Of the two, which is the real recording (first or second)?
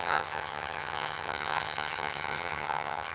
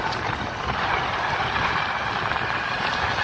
second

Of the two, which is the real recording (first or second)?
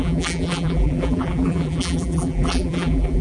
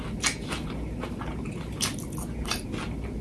second